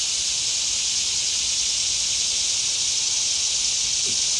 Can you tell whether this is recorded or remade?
recorded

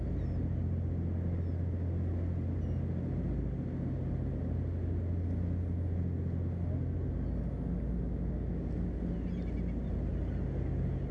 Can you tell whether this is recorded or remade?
recorded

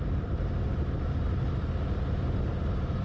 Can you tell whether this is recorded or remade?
remade